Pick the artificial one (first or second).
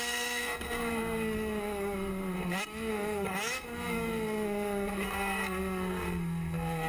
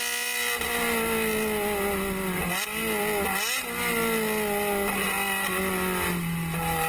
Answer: first